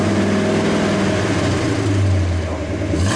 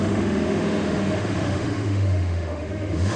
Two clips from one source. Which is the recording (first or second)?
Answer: first